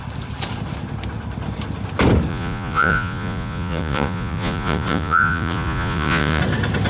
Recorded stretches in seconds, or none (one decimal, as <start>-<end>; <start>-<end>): 0.0-2.3; 6.4-6.9